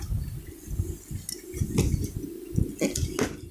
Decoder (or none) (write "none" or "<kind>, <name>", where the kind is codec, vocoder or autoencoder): none